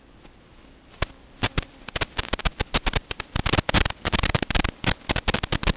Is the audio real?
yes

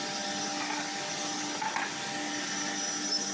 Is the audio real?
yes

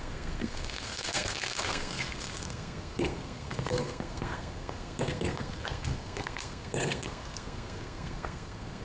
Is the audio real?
no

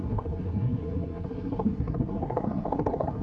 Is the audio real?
no